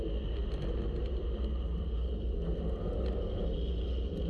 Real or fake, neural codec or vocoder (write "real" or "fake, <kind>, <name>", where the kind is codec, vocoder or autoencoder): real